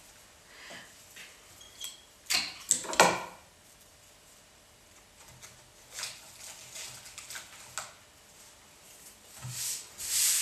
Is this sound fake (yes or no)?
no